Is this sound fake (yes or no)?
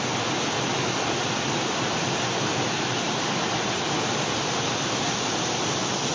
no